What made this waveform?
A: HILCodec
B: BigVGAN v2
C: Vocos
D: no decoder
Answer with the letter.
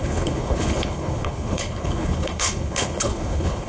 A